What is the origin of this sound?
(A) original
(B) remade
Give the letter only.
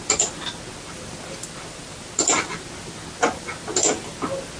A